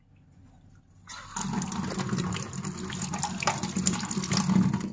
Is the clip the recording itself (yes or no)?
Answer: yes